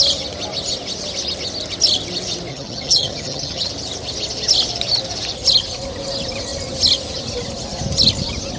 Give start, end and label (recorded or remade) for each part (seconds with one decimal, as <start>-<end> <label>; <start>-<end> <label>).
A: 0.0-2.5 recorded; 2.5-3.7 remade; 3.7-8.6 recorded